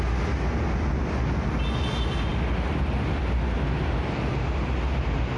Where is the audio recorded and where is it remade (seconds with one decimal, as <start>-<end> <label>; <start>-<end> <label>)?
0.0-5.4 recorded